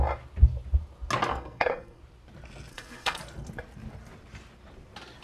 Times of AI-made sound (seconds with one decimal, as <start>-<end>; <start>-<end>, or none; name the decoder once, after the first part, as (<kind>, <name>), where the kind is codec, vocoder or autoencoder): 1.3-2.0 (codec, SNAC); 2.7-3.2